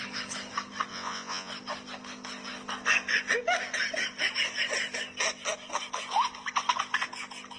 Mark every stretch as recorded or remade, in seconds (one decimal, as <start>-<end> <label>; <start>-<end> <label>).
0.0-0.9 recorded; 0.9-1.5 remade; 1.5-7.6 recorded